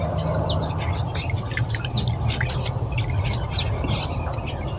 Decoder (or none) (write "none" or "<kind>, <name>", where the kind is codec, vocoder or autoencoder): none